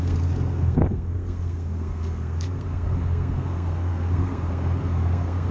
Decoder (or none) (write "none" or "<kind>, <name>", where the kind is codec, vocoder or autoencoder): codec, SNAC